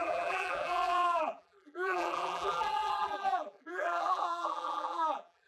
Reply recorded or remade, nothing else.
remade